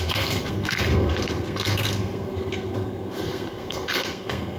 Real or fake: fake